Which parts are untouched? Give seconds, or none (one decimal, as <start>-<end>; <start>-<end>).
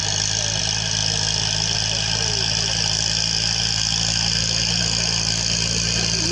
0.0-6.3